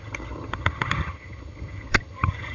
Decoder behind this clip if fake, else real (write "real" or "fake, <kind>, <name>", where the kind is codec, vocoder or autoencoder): fake, vocoder, HiFi-GAN